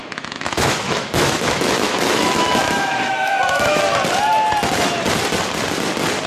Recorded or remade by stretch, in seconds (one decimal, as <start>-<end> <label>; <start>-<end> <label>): 0.0-3.8 remade; 3.8-6.3 recorded